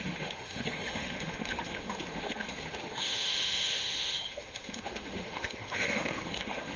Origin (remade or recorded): remade